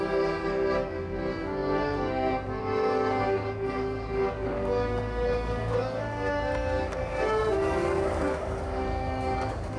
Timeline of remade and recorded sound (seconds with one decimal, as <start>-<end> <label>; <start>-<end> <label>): 0.0-9.8 remade